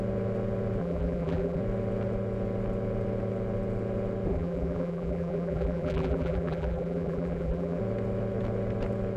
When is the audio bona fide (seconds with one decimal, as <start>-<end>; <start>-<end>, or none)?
0.0-0.8; 1.6-4.3; 7.8-9.2